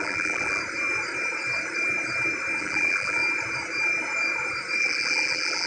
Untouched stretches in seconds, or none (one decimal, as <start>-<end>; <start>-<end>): 0.6-2.6; 3.2-4.8